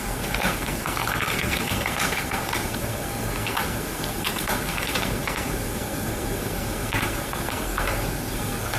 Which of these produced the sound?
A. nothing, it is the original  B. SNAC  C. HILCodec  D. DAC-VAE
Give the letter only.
B